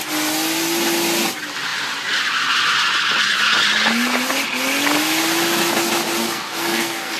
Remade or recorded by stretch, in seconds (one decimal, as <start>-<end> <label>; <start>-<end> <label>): 0.0-6.2 recorded; 6.2-7.2 remade